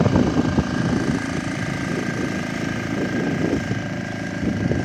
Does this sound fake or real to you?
real